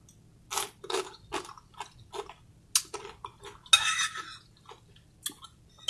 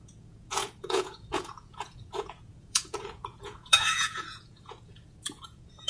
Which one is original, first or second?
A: first